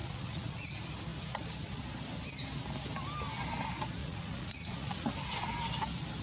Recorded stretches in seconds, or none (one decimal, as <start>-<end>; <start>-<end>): 0.7-4.0; 5.1-6.2